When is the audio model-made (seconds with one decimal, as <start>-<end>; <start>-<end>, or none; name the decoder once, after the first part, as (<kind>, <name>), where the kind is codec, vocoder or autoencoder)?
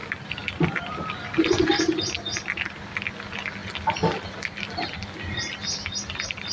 none